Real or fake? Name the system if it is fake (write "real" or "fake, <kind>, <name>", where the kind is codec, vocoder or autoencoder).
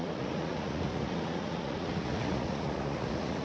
fake, vocoder, Vocos